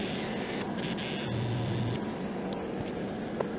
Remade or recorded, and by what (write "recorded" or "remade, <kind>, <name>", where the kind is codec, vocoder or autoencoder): recorded